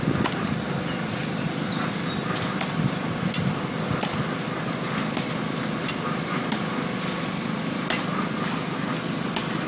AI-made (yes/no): no